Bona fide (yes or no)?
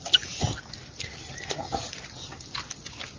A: yes